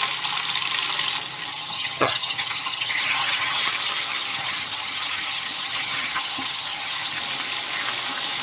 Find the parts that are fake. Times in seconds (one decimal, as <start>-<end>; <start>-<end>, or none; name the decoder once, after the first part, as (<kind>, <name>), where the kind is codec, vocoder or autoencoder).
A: 1.5-3.6 (vocoder, HiFi-GAN); 4.3-7.2